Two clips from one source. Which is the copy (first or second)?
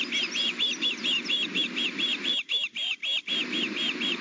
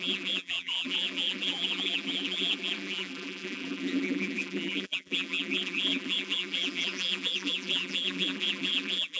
second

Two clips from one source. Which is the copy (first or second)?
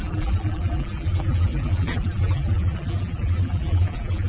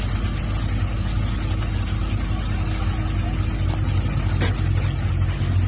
first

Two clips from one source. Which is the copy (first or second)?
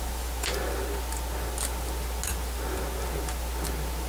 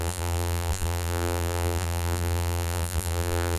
second